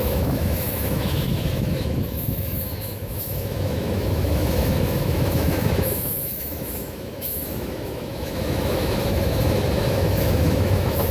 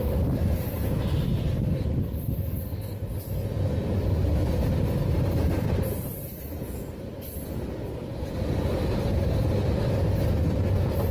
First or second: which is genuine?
second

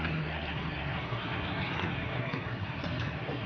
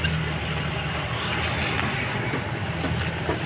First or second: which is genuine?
second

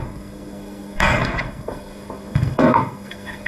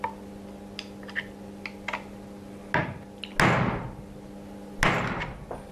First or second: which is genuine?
second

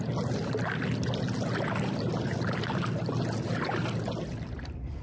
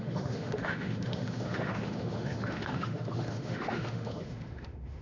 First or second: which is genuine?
first